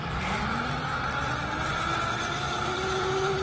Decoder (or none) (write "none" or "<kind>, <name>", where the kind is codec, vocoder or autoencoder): none